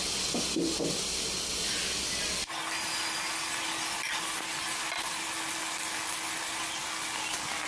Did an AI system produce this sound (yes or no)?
no